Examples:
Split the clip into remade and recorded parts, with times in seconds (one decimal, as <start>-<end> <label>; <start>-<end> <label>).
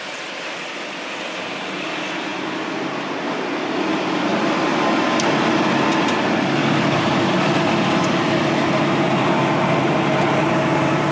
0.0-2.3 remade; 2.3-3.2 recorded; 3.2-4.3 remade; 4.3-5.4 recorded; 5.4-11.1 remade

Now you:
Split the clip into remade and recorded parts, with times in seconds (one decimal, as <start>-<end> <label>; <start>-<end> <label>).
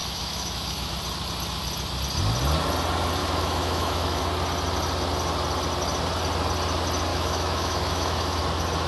0.0-0.9 remade; 0.9-3.2 recorded; 3.2-4.2 remade; 4.2-7.1 recorded; 7.1-8.4 remade; 8.4-8.9 recorded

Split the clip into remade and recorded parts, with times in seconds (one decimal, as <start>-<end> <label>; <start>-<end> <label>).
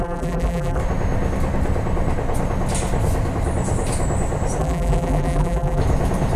0.0-0.8 remade; 0.8-4.6 recorded; 4.6-5.8 remade; 5.8-6.4 recorded